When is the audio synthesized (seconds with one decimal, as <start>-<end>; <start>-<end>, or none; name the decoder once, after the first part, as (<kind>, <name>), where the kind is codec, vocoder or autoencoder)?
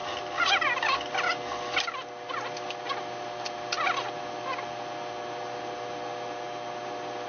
none